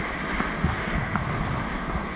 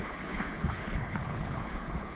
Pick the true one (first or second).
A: first